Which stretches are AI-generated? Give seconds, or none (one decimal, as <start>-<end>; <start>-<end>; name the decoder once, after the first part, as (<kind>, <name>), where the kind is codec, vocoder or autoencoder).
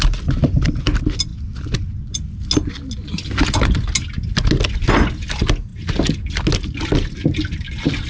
none